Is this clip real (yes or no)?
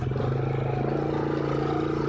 yes